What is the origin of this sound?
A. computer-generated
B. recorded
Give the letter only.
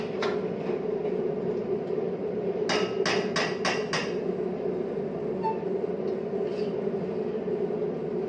B